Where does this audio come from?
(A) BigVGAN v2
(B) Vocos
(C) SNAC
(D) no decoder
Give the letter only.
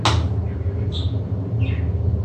D